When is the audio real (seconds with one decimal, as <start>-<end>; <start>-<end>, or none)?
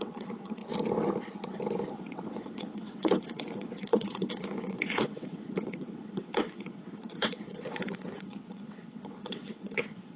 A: 0.6-1.9